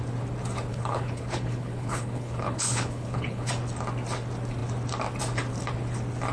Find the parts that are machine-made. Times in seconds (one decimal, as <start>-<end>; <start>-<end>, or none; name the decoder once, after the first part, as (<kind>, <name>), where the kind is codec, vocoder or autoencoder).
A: 0.7-3.5 (codec, HILCodec)